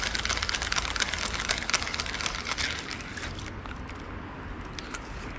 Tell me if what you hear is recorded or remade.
recorded